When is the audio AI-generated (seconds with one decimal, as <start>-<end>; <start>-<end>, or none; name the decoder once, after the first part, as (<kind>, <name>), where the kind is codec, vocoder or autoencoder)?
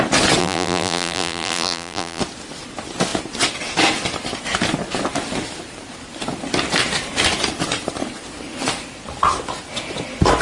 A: 0.4-2.2 (vocoder, BigVGAN v2)